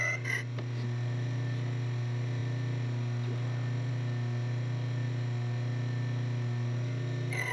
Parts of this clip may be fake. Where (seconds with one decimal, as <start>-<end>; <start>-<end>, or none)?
none